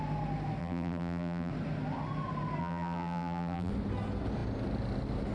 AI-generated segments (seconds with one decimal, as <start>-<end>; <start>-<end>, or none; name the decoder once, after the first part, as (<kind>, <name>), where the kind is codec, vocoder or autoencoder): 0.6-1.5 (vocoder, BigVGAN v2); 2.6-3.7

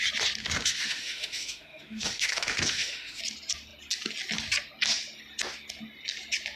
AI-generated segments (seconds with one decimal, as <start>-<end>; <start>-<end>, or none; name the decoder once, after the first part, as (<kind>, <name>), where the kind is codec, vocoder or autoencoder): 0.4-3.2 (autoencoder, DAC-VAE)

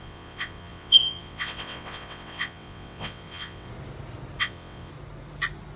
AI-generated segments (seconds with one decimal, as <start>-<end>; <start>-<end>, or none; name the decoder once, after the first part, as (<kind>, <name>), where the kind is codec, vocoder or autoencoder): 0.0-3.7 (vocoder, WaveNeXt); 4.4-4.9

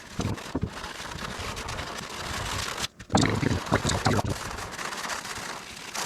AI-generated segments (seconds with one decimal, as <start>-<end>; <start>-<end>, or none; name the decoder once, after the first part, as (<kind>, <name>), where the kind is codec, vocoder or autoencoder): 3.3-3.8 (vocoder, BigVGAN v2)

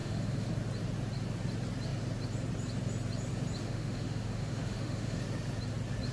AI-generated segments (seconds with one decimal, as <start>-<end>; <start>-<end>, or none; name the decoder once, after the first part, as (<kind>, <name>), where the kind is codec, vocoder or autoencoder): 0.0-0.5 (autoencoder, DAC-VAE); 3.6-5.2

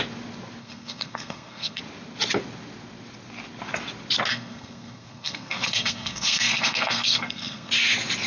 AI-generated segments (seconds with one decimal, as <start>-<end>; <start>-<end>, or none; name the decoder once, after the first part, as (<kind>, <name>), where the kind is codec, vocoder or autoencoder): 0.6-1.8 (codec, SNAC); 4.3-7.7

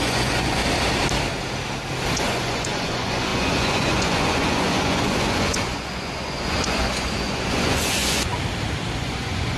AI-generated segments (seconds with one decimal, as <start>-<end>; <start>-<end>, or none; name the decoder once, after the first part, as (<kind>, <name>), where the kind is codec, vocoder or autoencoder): 0.0-0.6 (vocoder, Vocos); 2.1-8.3; 9.0-9.6

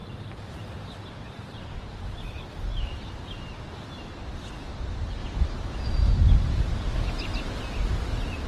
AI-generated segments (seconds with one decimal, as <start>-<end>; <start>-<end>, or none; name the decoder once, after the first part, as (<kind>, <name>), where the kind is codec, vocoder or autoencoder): 0.0-2.4 (vocoder, BigVGAN v2)